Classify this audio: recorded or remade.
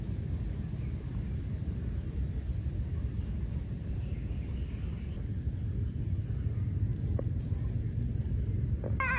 recorded